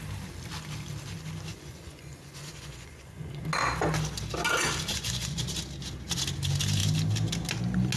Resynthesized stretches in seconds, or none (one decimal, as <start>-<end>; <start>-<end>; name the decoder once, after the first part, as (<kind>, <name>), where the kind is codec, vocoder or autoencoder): 1.5-3.4 (vocoder, Vocos); 4.9-5.5